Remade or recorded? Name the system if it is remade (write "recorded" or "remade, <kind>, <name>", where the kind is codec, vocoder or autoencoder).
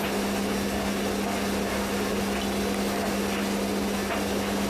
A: recorded